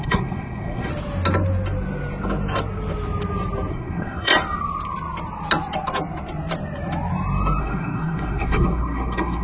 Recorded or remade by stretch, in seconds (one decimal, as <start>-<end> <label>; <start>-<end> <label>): 0.0-0.9 remade; 0.9-3.7 recorded; 3.7-4.3 remade; 4.3-7.6 recorded; 7.6-9.4 remade